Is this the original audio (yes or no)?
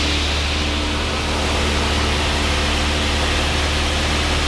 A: yes